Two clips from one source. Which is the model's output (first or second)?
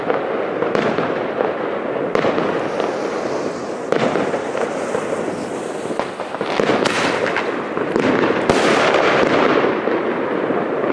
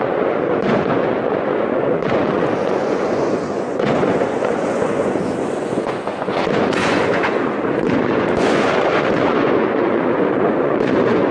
second